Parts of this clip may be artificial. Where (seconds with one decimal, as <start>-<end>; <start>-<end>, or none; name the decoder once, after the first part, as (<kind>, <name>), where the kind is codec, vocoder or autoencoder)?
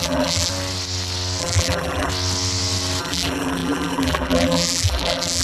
0.0-0.5 (vocoder, BigVGAN v2); 1.4-2.1; 3.0-5.4